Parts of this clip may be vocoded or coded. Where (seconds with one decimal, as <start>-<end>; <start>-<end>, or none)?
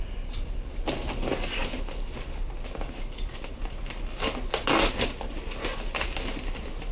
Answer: none